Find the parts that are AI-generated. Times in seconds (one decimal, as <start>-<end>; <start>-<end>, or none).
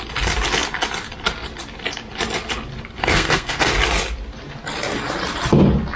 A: 3.0-3.7